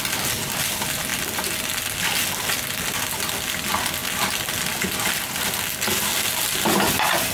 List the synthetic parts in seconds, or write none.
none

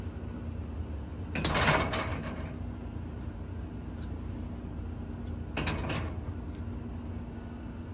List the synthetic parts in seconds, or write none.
2.1-5.3

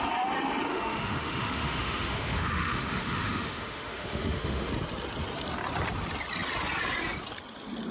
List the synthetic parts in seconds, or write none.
0.7-4.7

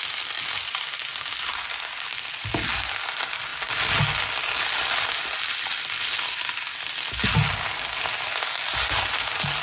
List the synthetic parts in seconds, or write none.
none

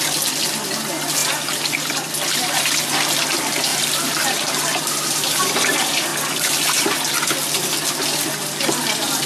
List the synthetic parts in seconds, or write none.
3.7-5.4

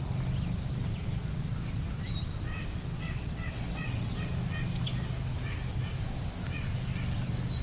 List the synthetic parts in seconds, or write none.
2.9-4.2

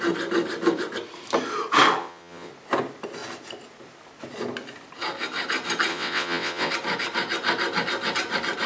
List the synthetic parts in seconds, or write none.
2.0-2.5; 5.9-6.7

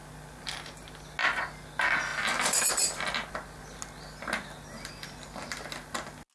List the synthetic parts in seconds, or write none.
none